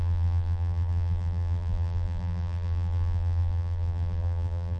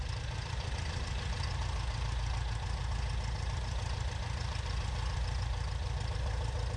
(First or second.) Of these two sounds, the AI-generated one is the first